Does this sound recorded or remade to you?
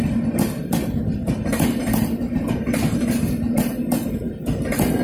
recorded